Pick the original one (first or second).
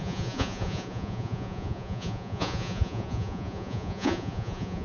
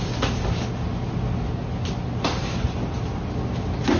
second